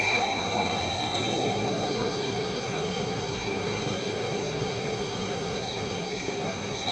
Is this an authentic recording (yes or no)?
no